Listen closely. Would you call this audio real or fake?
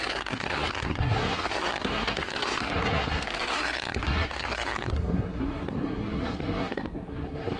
fake